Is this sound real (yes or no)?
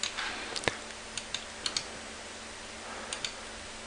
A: yes